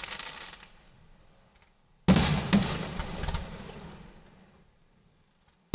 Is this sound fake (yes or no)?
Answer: no